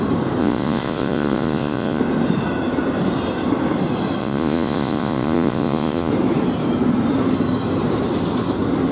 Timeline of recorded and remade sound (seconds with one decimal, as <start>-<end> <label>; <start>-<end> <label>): 0.0-0.4 recorded; 0.4-2.0 remade; 2.0-4.2 recorded; 4.2-6.1 remade; 6.1-8.9 recorded